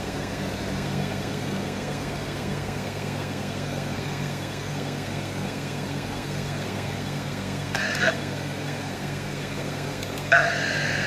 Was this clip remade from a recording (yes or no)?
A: yes